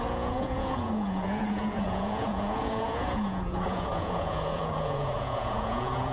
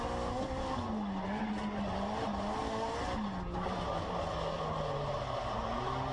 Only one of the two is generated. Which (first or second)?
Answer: first